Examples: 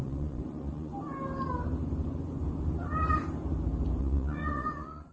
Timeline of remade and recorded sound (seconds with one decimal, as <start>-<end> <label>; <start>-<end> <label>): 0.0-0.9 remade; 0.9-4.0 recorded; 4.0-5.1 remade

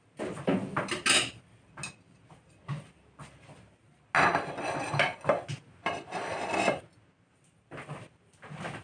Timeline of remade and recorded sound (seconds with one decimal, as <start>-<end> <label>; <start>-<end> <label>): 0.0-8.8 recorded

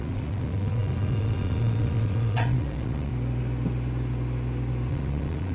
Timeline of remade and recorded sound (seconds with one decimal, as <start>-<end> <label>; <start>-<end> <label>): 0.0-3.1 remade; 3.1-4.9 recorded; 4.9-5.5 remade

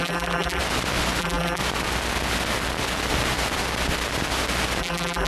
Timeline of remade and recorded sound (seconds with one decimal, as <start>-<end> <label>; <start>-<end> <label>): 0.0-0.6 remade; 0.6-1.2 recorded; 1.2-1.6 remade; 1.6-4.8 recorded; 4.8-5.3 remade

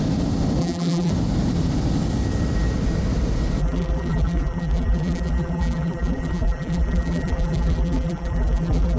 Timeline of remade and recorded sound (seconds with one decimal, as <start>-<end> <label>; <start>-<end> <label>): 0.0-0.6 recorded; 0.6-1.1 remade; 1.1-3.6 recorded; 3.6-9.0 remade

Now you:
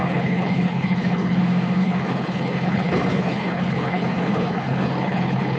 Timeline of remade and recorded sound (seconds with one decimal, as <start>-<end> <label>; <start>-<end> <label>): 0.0-1.4 remade; 1.4-1.8 recorded; 1.8-5.6 remade

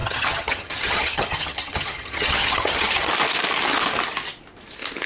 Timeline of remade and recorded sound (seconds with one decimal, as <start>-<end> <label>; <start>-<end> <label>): 0.0-3.1 remade; 3.1-5.1 recorded